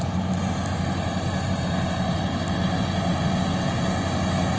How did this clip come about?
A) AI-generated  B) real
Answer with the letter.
B